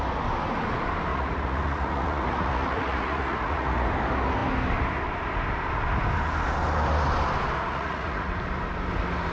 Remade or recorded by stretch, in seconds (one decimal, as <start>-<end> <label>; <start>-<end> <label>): 0.0-1.1 recorded; 1.1-3.9 remade; 3.9-7.7 recorded; 7.7-8.3 remade; 8.3-9.3 recorded